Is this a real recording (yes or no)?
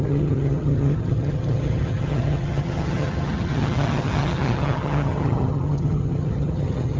no